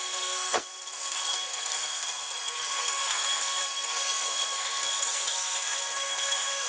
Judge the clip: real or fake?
fake